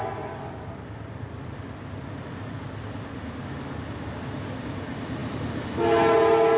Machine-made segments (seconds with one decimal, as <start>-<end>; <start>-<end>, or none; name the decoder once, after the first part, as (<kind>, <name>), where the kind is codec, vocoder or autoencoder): none